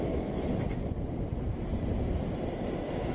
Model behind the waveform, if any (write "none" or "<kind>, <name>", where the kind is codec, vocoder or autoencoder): none